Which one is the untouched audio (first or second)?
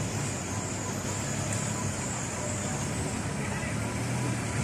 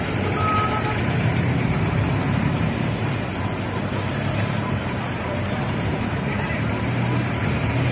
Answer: first